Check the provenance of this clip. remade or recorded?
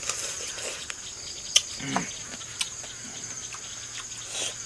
recorded